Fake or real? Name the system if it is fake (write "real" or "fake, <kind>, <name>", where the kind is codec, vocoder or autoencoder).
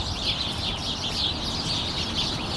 real